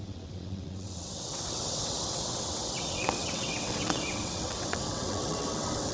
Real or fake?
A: fake